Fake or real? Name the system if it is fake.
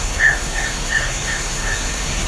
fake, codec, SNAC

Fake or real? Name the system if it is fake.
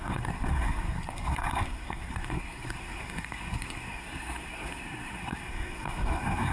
fake, codec, SNAC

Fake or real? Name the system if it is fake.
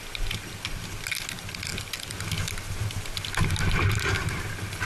real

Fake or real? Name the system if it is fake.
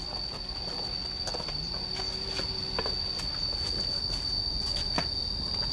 real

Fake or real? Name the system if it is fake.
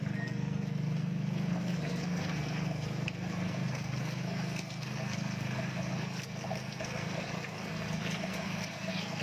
fake, codec, SNAC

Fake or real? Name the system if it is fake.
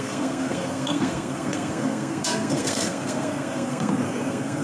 fake, codec, SNAC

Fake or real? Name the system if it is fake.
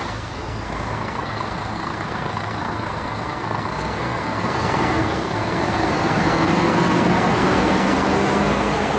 fake, codec, SNAC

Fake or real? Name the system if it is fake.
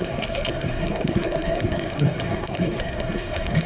fake, codec, SNAC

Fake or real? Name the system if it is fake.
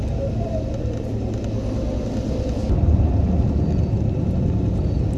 real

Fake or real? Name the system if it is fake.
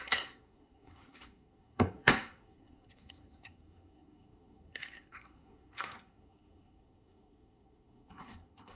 fake, codec, SNAC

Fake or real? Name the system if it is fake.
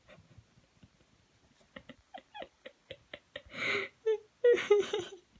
real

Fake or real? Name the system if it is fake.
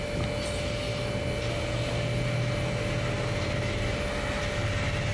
real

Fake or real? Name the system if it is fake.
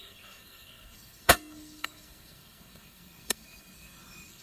fake, codec, SNAC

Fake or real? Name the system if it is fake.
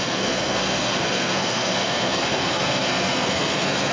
fake, codec, SNAC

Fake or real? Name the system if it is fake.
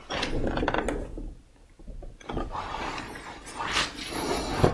real